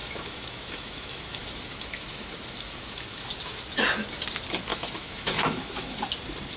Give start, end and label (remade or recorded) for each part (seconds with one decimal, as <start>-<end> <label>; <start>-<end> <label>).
0.0-3.3 remade; 3.3-4.7 recorded; 4.7-6.0 remade; 6.0-6.6 recorded

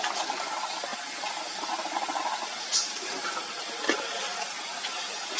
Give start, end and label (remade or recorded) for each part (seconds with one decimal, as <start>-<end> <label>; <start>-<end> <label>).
0.0-5.4 recorded

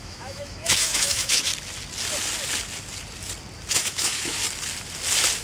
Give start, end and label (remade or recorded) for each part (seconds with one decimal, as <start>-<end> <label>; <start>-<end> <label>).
0.0-1.5 remade; 1.5-3.7 recorded; 3.7-4.4 remade; 4.4-5.4 recorded

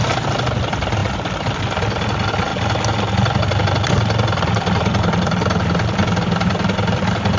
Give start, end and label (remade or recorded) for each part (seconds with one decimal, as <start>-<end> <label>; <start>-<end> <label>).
0.0-7.4 recorded

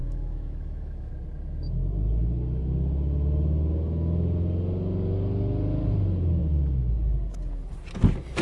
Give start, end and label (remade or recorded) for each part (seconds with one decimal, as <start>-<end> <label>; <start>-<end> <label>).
0.0-1.1 remade; 1.1-8.4 recorded

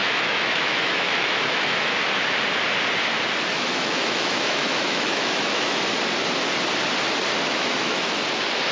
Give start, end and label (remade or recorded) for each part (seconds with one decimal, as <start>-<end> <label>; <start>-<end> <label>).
0.0-2.0 remade; 2.0-3.5 recorded; 3.5-5.8 remade; 5.8-7.4 recorded; 7.4-8.2 remade; 8.2-8.7 recorded

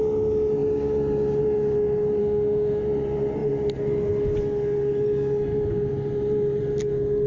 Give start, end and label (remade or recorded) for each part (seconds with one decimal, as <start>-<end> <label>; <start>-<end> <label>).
0.0-2.2 recorded; 2.2-2.8 remade; 2.8-7.3 recorded